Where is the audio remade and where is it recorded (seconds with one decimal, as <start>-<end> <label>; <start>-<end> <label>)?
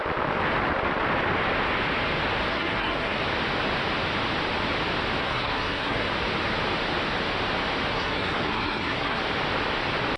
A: 0.0-2.5 recorded; 2.5-3.2 remade; 3.2-5.2 recorded; 5.2-6.1 remade; 6.1-7.9 recorded; 7.9-9.2 remade; 9.2-10.2 recorded